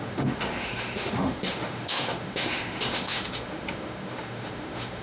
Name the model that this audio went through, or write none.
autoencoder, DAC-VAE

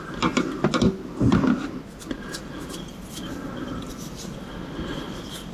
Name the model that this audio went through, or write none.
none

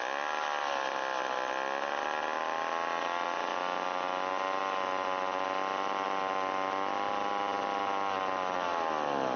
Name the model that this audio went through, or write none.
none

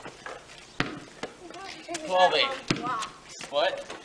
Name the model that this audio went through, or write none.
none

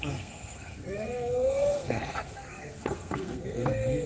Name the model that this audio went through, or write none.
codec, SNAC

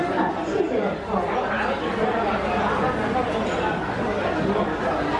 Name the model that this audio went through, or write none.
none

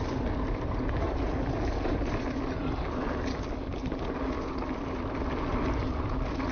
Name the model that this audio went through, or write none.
none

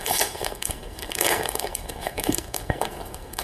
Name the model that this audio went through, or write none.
codec, SNAC